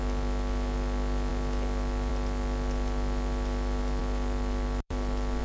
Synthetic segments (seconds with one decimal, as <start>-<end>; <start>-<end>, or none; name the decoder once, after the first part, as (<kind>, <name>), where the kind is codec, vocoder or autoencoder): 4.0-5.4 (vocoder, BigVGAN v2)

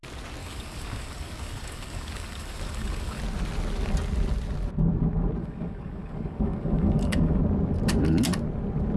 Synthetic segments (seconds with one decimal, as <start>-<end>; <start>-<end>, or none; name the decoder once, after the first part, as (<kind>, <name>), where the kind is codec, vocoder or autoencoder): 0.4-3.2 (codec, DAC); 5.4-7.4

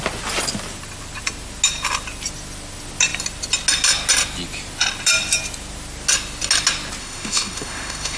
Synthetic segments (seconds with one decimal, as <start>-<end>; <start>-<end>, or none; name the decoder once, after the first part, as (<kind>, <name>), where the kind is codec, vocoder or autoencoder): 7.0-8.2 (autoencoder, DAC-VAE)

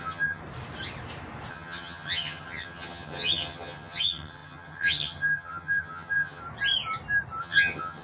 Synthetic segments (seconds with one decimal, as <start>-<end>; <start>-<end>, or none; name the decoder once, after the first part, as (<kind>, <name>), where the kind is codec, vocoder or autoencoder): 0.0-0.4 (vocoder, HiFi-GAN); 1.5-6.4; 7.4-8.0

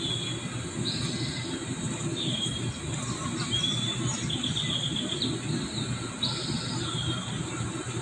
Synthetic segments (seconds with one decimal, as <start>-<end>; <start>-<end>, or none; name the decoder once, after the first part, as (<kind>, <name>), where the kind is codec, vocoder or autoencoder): none